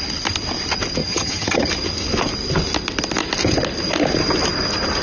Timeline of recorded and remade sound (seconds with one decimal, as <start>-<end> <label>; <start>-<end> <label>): 0.0-1.0 recorded; 1.0-1.7 remade; 1.7-5.0 recorded

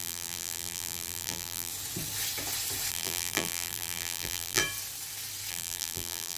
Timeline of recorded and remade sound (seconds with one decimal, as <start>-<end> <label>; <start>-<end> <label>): 0.0-1.7 remade; 1.7-2.9 recorded; 2.9-4.6 remade; 4.6-5.5 recorded; 5.5-6.4 remade

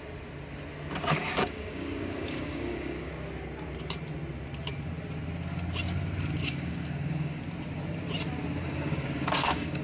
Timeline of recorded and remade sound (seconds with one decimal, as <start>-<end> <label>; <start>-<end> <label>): 0.0-1.2 recorded; 1.2-3.1 remade; 3.1-6.4 recorded; 6.4-7.4 remade; 7.4-8.6 recorded; 8.6-9.8 remade

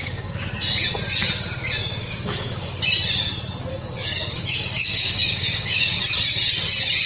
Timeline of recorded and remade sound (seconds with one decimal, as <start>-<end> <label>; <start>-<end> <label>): 0.0-0.5 remade; 0.5-1.8 recorded; 1.8-2.8 remade; 2.8-3.7 recorded; 3.7-6.0 remade; 6.0-7.1 recorded